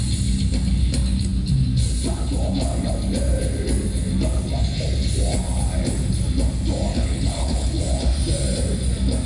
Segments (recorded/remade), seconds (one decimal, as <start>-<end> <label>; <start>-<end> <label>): 0.0-6.9 recorded; 6.9-7.8 remade; 7.8-9.3 recorded